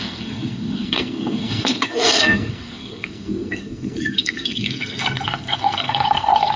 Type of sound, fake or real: fake